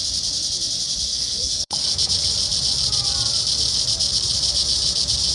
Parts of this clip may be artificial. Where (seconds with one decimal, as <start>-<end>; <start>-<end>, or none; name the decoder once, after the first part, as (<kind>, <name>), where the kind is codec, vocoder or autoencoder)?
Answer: 1.1-1.8 (codec, SNAC)